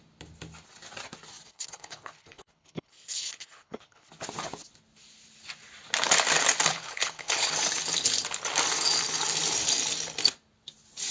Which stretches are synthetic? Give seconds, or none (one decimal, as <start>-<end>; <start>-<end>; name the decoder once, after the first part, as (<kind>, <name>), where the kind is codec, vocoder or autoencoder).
1.5-4.1 (codec, HILCodec); 6.7-7.5